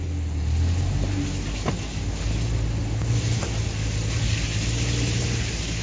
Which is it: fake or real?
real